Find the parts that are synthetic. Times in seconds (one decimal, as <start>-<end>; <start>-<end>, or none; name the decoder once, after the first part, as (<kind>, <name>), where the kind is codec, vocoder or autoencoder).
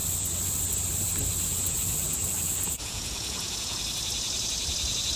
1.5-3.8 (vocoder, Vocos)